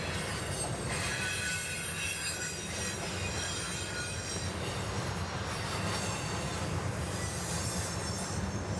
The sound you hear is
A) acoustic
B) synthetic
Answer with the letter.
A